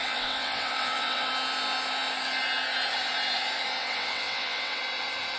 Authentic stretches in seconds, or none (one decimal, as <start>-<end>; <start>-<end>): 1.3-3.8; 4.8-5.4

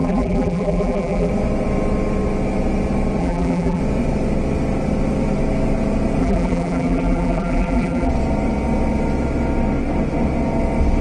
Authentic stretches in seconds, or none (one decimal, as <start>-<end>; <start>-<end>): 1.3-3.2; 3.8-6.2; 8.1-11.0

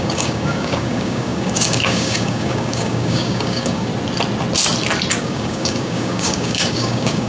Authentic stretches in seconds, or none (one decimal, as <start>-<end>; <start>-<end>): 3.9-5.2